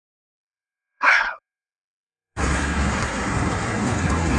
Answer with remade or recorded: remade